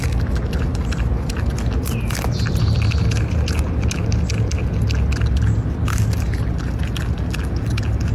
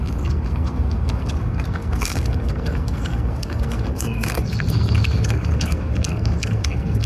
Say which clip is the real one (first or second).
first